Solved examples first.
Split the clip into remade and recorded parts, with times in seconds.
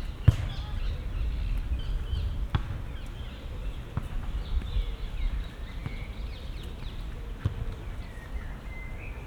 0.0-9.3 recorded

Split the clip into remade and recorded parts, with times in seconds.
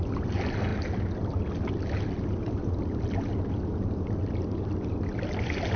0.0-5.8 recorded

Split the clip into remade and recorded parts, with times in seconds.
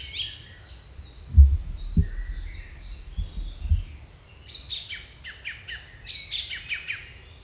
0.0-7.4 recorded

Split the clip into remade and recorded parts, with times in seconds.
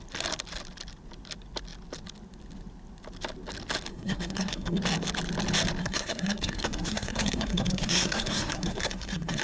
0.0-3.9 recorded; 3.9-4.8 remade; 4.8-5.8 recorded; 5.8-9.4 remade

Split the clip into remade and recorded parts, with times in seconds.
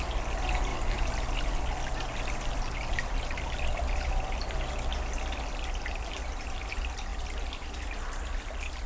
0.0-8.9 recorded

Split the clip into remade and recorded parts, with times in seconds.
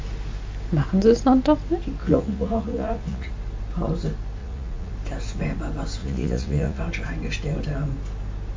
0.0-2.0 recorded; 2.0-3.3 remade; 3.3-4.4 recorded; 4.4-4.9 remade; 4.9-6.0 recorded; 6.0-6.8 remade; 6.8-8.6 recorded